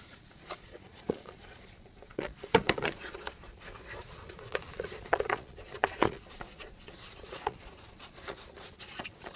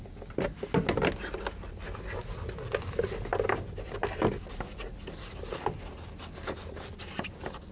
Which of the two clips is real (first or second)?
second